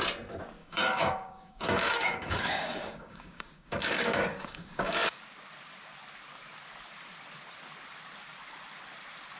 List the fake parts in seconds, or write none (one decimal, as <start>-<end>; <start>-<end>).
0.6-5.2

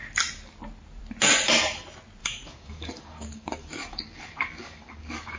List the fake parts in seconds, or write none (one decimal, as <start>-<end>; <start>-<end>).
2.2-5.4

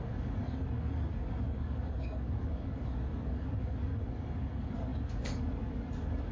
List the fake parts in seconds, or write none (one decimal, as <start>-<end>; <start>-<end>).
0.0-6.3